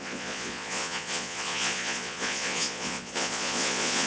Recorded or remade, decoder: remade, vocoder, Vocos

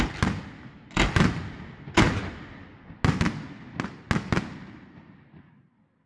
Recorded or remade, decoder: recorded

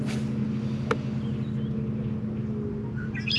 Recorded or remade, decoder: recorded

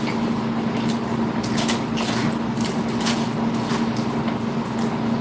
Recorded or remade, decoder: recorded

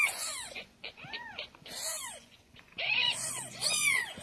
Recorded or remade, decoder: remade, vocoder, Vocos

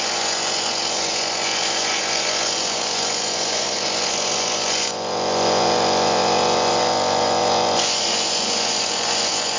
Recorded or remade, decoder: remade, vocoder, Vocos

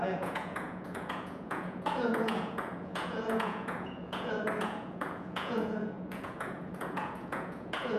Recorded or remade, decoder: remade, vocoder, Vocos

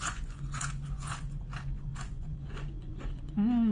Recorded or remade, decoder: remade, vocoder, Vocos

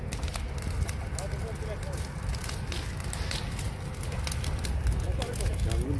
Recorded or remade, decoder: recorded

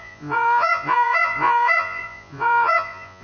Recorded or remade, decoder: remade, vocoder, Vocos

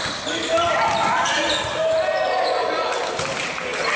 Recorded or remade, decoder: recorded